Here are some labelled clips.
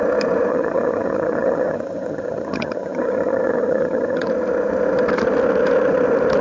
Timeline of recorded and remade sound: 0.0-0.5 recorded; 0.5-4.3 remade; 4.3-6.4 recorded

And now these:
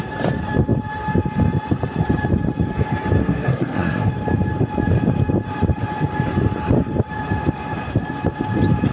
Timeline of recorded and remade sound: 0.0-3.2 recorded; 3.2-4.1 remade; 4.1-8.9 recorded

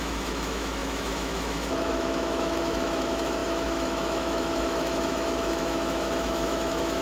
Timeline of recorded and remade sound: 0.0-7.0 remade

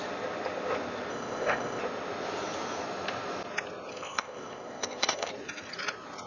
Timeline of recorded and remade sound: 0.0-1.1 recorded; 1.1-1.8 remade; 1.8-3.9 recorded; 3.9-5.3 remade; 5.3-6.3 recorded